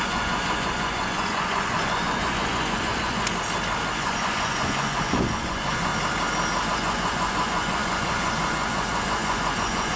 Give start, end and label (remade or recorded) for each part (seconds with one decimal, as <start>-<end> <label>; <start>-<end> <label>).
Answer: 0.0-3.3 remade; 3.3-3.9 recorded; 3.9-5.9 remade; 5.9-6.7 recorded; 6.7-10.0 remade